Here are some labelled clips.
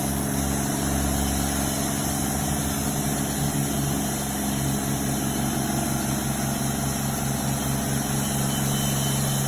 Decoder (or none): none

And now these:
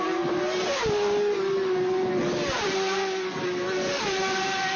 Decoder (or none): none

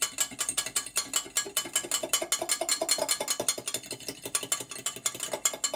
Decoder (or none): none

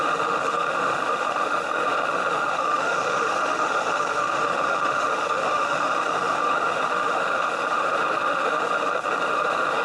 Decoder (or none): autoencoder, DAC-VAE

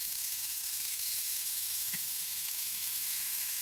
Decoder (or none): autoencoder, DAC-VAE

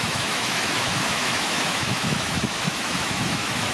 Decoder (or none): autoencoder, DAC-VAE